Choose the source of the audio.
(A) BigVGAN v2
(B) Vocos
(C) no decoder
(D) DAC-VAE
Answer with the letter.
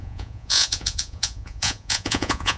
B